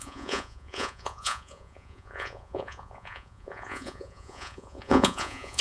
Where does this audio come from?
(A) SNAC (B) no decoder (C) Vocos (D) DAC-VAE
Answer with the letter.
C